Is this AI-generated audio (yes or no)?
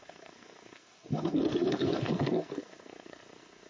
yes